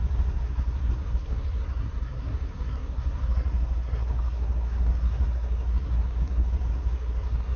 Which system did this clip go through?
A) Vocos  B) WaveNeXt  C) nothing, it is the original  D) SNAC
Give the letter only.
D